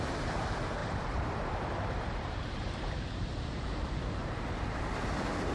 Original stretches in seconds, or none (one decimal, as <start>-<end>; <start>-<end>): 0.0-0.8; 2.9-4.2; 4.8-5.5